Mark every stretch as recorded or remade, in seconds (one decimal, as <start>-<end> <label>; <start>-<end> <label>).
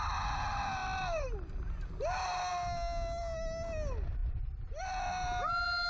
0.0-5.9 recorded